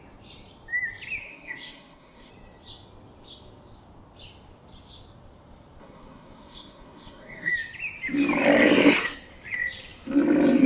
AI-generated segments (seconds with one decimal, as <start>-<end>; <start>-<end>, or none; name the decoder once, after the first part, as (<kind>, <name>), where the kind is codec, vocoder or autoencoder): 1.2-2.3 (codec, SNAC); 5.8-7.5

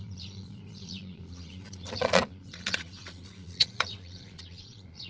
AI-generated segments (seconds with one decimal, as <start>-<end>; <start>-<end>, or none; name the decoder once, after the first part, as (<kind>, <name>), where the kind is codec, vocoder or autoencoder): 0.0-5.1 (vocoder, Vocos)

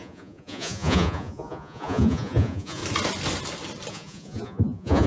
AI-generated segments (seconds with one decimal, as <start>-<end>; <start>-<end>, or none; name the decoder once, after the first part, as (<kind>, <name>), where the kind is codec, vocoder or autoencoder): 0.0-2.8 (vocoder, Vocos); 3.9-5.1

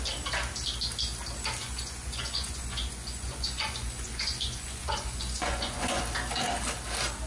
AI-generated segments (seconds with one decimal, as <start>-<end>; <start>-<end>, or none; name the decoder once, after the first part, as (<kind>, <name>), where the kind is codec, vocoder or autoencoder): 1.6-6.0 (vocoder, Vocos)

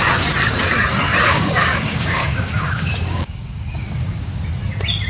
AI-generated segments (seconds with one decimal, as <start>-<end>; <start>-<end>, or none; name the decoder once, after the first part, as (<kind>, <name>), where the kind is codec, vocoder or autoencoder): 1.3-4.4 (codec, DAC)

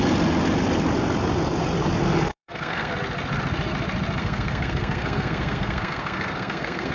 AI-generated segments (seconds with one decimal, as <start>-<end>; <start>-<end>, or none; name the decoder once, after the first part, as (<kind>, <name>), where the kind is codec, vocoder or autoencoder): 2.3-2.9 (codec, SNAC); 4.2-6.9